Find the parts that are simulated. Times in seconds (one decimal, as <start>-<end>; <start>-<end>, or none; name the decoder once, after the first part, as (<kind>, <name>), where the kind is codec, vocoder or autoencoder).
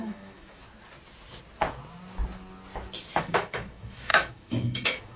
0.0-0.6 (autoencoder, DAC-VAE); 3.2-5.2